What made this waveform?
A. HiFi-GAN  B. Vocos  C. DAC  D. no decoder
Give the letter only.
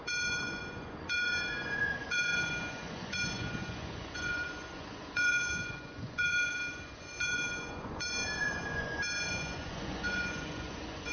B